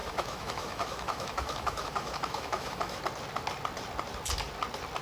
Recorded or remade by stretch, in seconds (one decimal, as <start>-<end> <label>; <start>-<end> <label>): 0.0-3.0 remade; 3.0-5.0 recorded